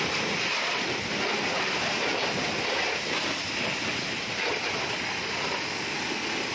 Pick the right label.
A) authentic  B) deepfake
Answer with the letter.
A